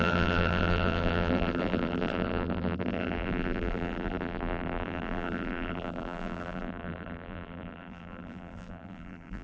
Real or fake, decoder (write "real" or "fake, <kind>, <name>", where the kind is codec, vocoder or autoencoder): fake, vocoder, BigVGAN v2